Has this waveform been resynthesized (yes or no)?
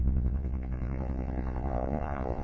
yes